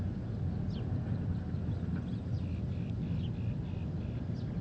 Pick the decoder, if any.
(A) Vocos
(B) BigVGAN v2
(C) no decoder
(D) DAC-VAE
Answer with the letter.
C